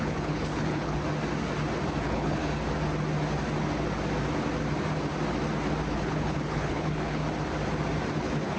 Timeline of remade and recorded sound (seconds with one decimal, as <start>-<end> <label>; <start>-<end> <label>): 0.0-1.0 remade; 1.0-2.0 recorded; 2.0-2.4 remade; 2.4-5.9 recorded; 5.9-7.2 remade; 7.2-8.2 recorded; 8.2-8.6 remade